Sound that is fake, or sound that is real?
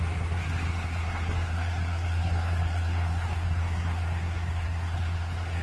fake